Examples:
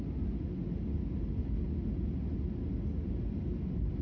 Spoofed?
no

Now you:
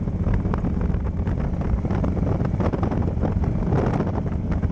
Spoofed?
no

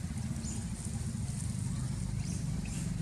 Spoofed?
no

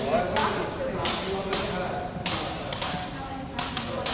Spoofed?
no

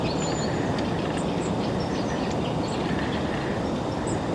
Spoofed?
no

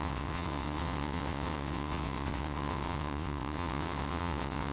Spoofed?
yes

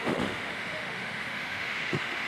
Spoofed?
yes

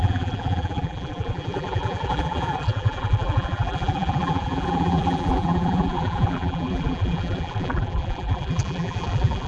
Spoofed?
yes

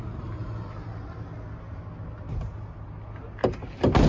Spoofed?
no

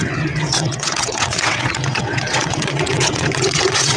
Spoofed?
yes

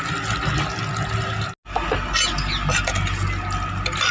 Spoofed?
no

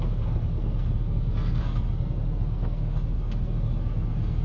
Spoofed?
yes